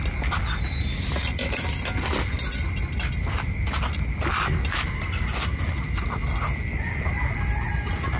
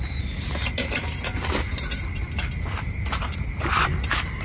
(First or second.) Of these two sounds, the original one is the first